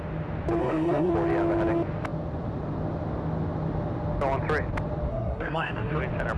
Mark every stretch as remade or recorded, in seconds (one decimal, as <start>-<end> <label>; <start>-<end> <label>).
0.0-0.6 recorded; 0.6-1.1 remade; 1.1-5.1 recorded; 5.1-6.0 remade; 6.0-6.4 recorded